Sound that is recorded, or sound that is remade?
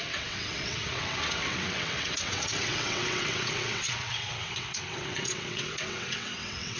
remade